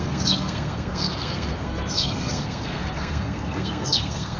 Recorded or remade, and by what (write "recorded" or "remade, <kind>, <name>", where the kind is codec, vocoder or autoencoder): remade, codec, SNAC